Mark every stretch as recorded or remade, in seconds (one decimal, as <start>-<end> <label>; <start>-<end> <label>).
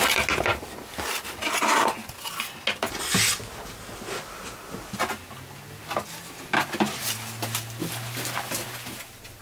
0.0-9.4 recorded